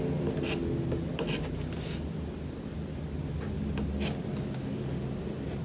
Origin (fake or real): real